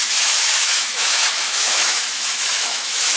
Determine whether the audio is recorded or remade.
remade